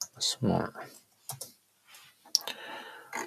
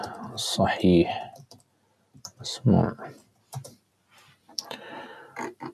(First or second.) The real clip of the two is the first